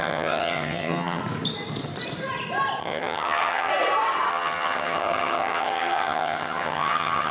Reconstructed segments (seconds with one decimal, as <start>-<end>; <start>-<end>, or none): 0.0-1.2; 2.8-3.7; 4.3-7.3